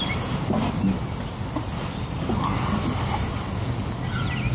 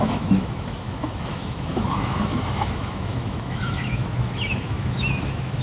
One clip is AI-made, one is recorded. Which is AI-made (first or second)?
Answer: second